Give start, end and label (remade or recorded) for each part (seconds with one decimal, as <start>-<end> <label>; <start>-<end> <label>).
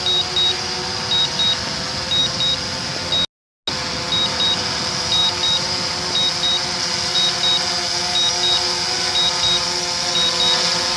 0.0-11.0 recorded